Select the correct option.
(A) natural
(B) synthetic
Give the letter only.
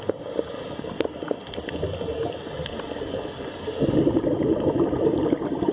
A